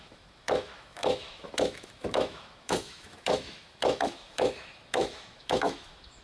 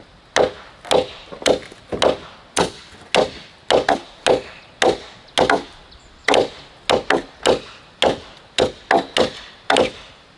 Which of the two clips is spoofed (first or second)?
first